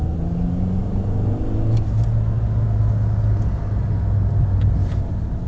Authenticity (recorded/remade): recorded